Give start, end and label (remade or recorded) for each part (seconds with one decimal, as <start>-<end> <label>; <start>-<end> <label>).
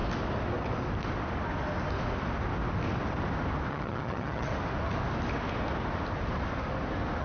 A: 0.0-3.7 recorded; 3.7-4.5 remade; 4.5-7.2 recorded